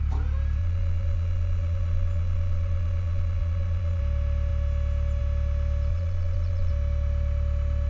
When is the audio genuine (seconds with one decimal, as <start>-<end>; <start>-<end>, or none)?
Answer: 0.0-0.6; 4.0-5.9; 6.7-7.9